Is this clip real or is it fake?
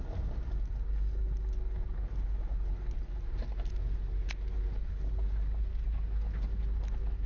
real